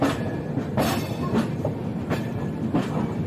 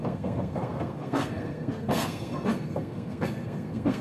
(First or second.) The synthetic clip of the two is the second